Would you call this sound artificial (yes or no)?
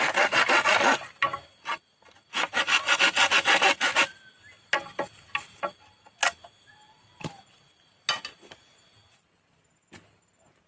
no